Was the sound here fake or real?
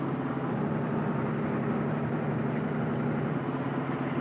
real